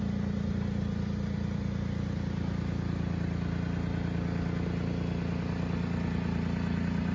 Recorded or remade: recorded